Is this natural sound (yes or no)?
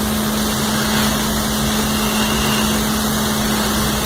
yes